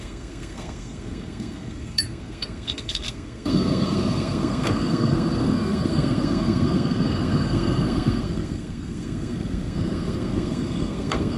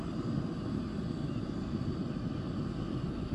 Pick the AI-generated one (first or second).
first